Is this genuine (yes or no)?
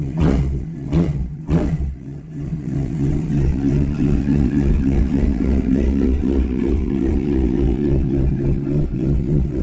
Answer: no